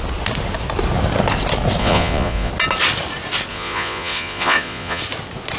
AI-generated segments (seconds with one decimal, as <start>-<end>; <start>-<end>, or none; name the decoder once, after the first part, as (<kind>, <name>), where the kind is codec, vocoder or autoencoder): 1.8-2.5 (vocoder, Vocos); 3.5-5.0